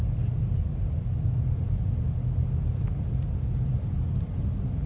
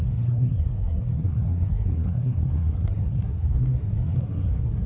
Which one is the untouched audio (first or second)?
first